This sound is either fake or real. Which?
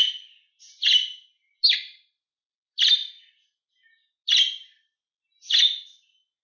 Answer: real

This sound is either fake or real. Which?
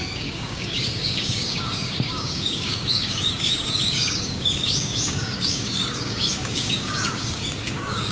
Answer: fake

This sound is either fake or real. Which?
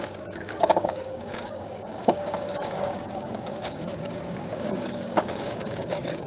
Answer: fake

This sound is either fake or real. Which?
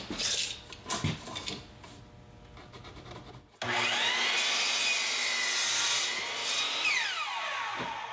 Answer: real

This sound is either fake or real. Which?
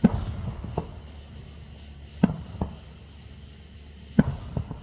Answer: real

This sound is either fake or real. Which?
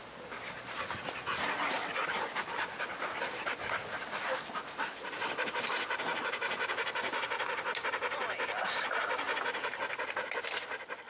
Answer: real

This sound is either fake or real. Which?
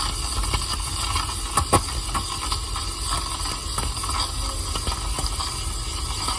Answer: real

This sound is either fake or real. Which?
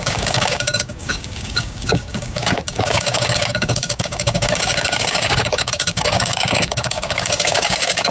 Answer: fake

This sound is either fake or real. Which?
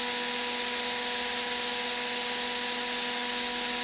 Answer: real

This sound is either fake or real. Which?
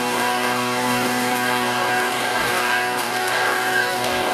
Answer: fake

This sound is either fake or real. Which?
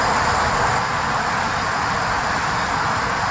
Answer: real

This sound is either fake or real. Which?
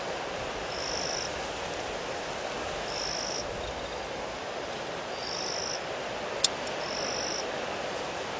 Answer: real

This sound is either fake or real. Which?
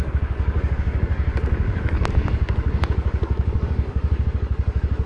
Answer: fake